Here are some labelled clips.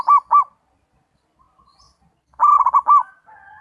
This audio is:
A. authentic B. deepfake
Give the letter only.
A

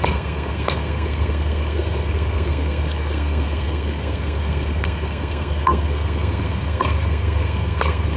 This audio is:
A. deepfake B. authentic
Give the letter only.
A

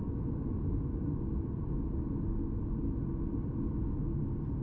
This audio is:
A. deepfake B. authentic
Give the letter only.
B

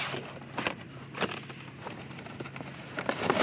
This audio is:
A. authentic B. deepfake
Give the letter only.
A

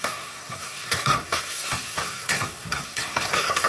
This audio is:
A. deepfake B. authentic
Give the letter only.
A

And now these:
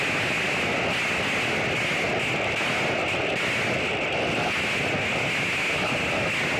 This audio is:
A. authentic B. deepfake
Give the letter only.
A